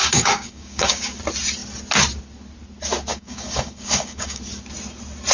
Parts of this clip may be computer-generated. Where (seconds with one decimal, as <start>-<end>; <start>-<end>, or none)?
0.0-1.2; 3.1-4.4